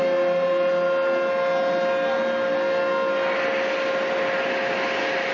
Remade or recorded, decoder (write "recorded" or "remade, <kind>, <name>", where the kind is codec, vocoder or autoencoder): recorded